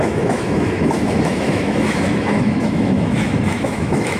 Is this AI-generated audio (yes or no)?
yes